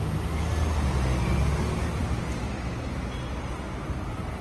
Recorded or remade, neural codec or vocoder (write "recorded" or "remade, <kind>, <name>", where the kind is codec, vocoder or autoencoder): recorded